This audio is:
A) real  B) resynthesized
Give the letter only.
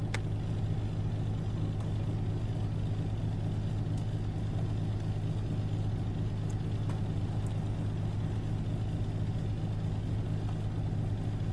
A